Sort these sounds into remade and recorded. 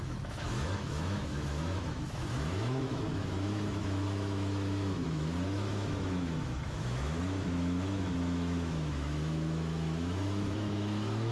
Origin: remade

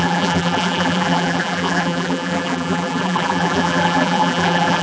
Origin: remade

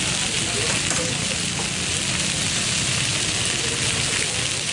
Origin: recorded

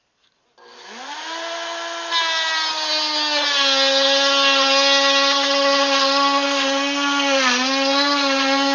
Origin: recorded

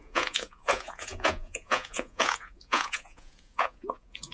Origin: remade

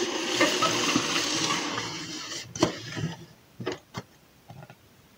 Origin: recorded